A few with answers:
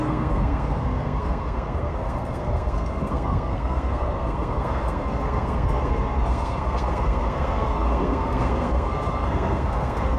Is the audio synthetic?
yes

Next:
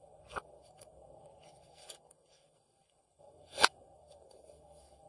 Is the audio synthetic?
yes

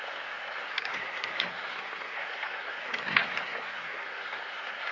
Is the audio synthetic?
yes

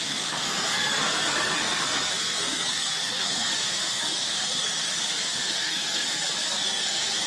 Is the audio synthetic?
yes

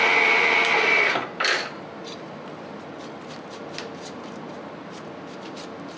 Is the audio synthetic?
no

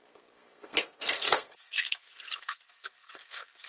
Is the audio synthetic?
yes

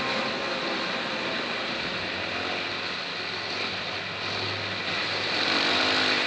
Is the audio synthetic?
no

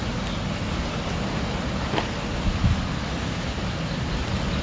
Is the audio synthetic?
no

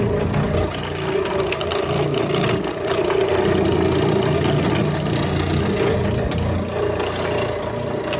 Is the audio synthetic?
no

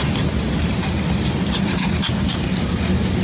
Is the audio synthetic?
no